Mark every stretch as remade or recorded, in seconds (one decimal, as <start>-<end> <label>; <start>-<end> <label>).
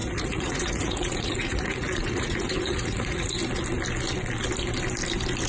0.0-3.3 remade; 3.3-5.5 recorded